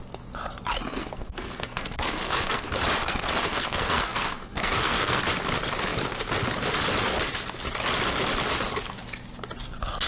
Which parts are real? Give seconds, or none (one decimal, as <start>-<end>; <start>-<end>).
0.0-1.0; 2.6-3.0; 5.2-10.1